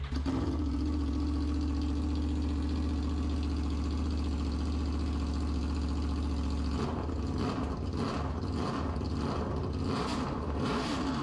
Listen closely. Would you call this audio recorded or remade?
recorded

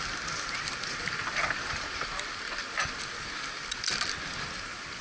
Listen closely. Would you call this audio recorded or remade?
recorded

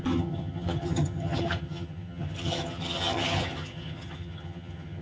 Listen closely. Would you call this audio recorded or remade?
remade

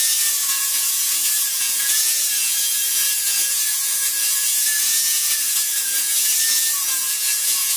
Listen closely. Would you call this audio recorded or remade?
remade